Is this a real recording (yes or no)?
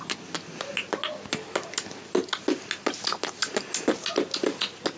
yes